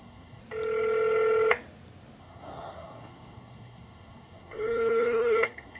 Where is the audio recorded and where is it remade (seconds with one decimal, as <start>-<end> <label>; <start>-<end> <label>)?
0.0-0.4 remade; 0.4-2.2 recorded; 2.2-5.8 remade